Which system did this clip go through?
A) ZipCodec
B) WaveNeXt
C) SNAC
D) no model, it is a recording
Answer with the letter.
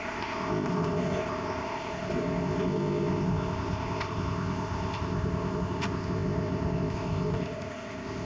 A